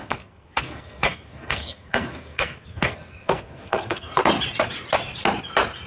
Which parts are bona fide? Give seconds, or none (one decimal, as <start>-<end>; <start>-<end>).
4.2-5.9